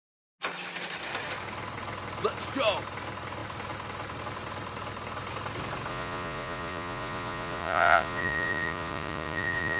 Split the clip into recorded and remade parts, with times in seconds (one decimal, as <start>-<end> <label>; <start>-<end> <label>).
0.0-5.9 recorded; 5.9-9.8 remade